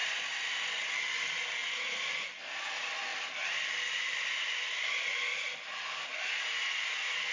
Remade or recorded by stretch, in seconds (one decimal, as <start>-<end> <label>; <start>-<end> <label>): 0.0-0.8 remade; 0.8-3.1 recorded; 3.1-5.2 remade; 5.2-7.3 recorded